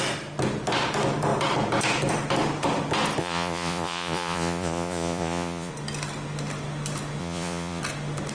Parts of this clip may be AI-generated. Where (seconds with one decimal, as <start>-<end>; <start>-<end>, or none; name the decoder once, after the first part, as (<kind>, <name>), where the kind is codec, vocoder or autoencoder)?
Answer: 3.2-5.7 (vocoder, Vocos); 7.2-7.8